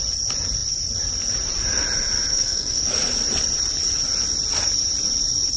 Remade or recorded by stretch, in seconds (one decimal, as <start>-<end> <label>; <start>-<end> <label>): 0.0-2.3 recorded; 2.3-2.8 remade; 2.8-5.6 recorded